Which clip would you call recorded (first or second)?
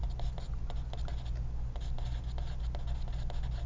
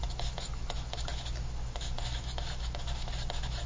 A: first